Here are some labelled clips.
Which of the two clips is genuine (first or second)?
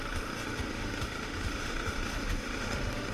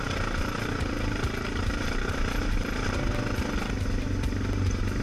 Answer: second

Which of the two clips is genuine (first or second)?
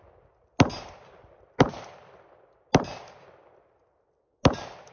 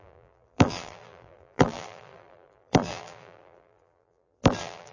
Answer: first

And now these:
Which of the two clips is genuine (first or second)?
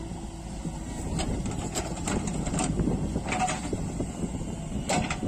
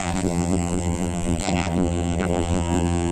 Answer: first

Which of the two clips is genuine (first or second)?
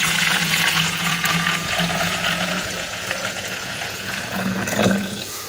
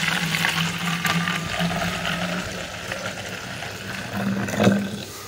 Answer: second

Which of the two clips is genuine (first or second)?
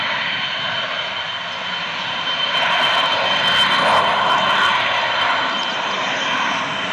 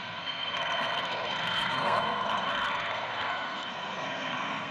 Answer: first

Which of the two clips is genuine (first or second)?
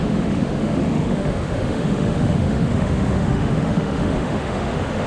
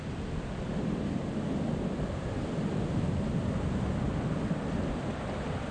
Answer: second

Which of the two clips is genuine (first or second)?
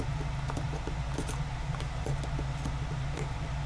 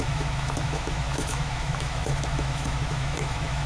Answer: first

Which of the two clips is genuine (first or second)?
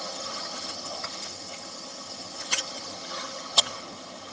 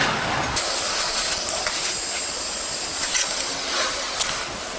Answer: second